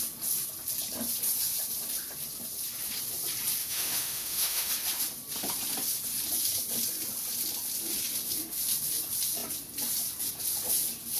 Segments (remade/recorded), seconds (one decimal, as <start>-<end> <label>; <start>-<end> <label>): 0.0-3.6 recorded; 3.6-4.7 remade; 4.7-11.2 recorded